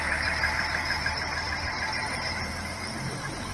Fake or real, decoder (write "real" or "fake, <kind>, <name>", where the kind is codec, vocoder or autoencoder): fake, vocoder, BigVGAN v2